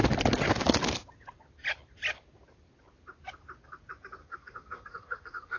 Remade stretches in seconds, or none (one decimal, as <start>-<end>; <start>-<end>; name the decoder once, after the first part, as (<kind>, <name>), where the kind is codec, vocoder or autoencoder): 4.2-5.6 (codec, SNAC)